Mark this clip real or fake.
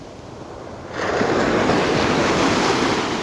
real